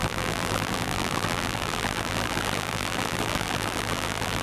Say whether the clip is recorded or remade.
remade